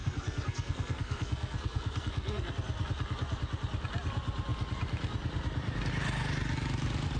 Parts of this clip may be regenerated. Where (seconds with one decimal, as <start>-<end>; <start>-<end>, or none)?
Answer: 0.0-2.5